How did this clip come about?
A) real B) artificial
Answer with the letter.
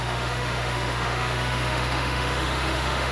B